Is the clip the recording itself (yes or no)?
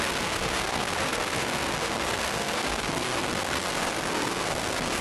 no